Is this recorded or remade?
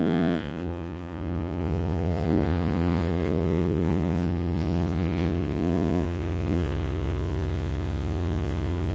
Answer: remade